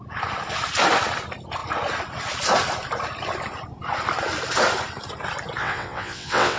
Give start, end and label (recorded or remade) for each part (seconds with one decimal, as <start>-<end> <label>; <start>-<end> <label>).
0.0-5.6 recorded; 5.6-6.6 remade